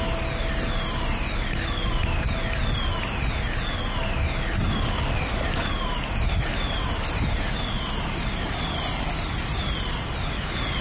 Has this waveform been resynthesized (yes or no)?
no